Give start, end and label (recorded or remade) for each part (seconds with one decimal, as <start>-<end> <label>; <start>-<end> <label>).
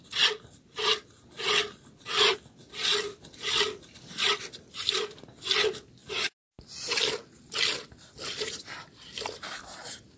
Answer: 0.0-10.2 recorded